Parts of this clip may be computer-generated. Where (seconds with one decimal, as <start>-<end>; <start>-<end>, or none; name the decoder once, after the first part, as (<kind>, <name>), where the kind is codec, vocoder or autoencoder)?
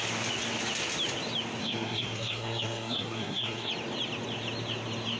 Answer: 1.6-3.7 (codec, SNAC)